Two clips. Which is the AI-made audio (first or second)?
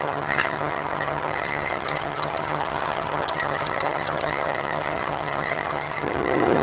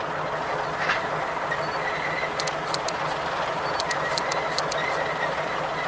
first